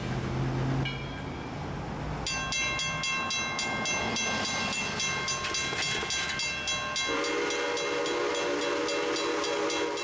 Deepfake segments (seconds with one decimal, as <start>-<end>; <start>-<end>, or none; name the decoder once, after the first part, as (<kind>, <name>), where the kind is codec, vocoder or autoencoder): none